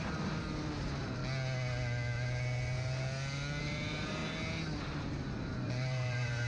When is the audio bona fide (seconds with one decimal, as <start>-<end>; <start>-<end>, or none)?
1.2-3.6; 4.2-4.8